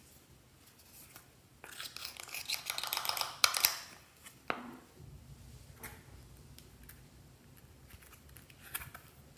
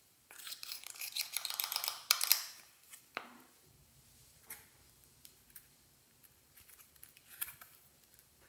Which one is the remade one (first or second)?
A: second